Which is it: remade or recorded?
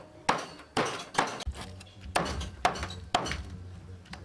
recorded